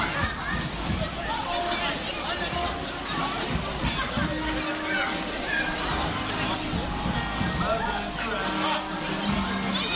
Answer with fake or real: real